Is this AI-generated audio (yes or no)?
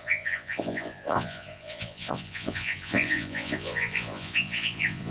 yes